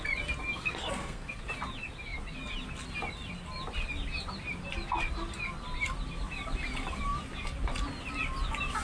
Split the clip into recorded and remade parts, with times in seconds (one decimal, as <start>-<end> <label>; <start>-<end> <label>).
0.0-0.5 recorded; 0.5-1.4 remade; 1.4-8.8 recorded